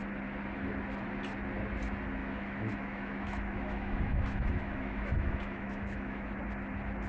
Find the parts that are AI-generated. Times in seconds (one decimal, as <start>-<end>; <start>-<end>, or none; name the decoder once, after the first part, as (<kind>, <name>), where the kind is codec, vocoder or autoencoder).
2.2-6.4 (autoencoder, DAC-VAE)